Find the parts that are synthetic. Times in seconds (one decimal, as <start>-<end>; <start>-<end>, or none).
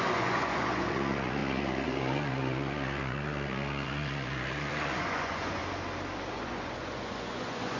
0.0-5.6; 6.3-7.8